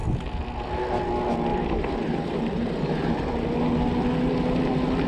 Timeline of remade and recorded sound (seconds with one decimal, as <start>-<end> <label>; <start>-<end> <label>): 0.0-1.5 recorded; 1.5-3.3 remade; 3.3-5.1 recorded